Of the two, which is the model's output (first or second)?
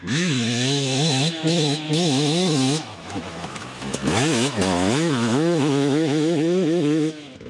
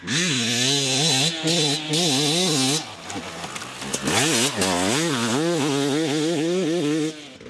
first